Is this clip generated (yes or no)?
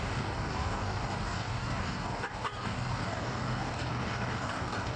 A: yes